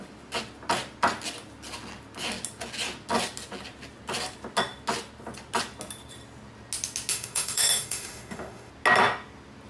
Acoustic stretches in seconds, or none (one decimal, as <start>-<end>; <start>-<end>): 0.0-7.1; 8.7-9.7